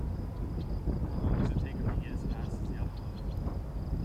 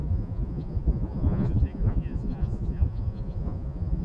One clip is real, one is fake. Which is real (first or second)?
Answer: first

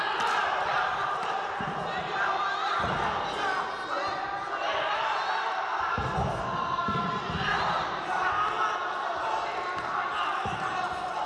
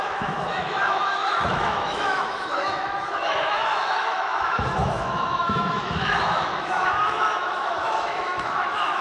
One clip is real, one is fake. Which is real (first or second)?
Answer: first